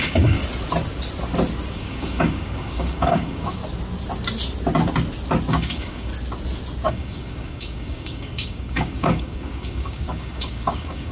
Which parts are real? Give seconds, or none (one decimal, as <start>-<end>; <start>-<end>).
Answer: 0.4-1.7; 3.6-5.5; 6.1-6.9